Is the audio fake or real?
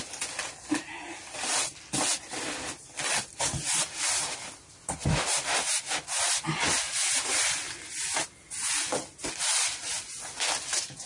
real